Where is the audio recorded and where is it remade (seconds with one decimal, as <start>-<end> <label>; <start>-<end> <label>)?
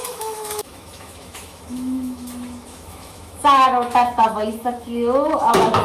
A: 0.0-5.8 remade